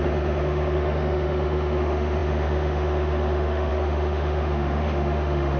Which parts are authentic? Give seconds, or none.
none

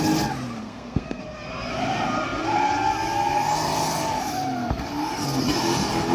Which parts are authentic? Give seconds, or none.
0.0-0.6; 1.2-6.1

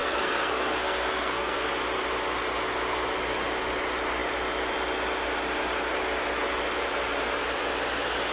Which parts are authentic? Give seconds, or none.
1.7-8.3

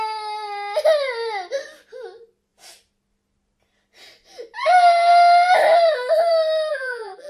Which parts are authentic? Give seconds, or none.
0.0-6.7

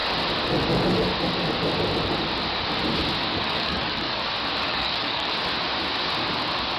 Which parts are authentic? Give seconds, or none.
0.0-3.2; 4.2-4.7; 5.3-6.8